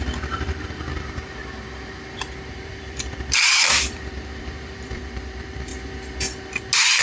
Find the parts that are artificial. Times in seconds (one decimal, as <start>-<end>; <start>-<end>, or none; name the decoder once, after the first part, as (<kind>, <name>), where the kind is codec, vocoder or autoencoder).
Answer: 0.0-1.4 (vocoder, BigVGAN v2); 2.5-5.7